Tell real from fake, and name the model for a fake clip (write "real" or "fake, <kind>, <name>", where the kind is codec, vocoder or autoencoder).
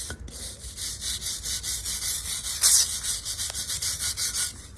real